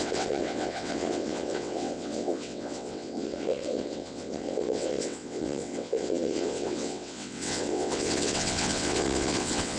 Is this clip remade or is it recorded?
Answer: remade